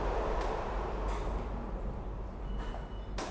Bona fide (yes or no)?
yes